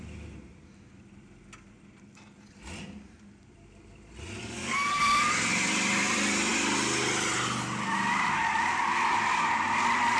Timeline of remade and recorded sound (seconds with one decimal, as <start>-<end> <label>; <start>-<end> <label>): 0.0-4.4 recorded; 4.4-5.0 remade; 5.0-10.2 recorded